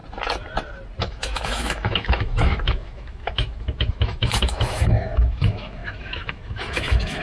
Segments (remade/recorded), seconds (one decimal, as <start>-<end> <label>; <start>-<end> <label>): 0.0-1.0 recorded; 1.0-7.2 remade